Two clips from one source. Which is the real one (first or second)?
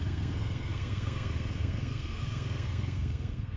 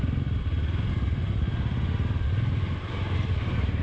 second